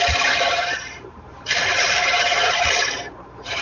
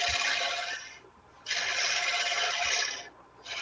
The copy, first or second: first